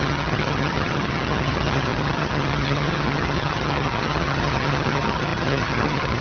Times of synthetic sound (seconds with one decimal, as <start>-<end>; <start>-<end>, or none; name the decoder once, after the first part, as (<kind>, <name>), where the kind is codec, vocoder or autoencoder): 0.0-6.2 (vocoder, HiFi-GAN)